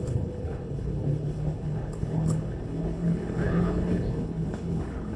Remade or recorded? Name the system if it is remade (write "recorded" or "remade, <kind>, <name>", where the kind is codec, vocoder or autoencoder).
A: remade, codec, HILCodec